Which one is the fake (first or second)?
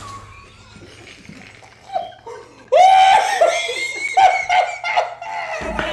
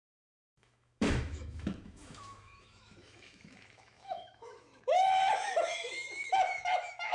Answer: second